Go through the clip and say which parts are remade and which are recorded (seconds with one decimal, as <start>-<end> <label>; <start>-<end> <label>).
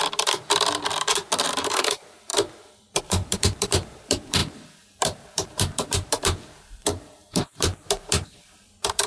0.0-1.5 recorded; 1.5-2.3 remade; 2.3-3.0 recorded; 3.0-9.1 remade